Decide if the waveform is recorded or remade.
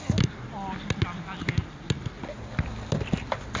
recorded